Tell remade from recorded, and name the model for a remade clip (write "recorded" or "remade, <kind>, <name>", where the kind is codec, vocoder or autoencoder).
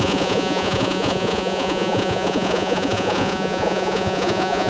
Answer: remade, vocoder, Vocos